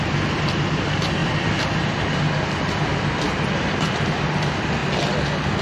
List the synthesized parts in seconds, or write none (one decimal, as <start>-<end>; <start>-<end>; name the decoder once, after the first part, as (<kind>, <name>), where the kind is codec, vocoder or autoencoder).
0.0-4.8 (vocoder, BigVGAN v2)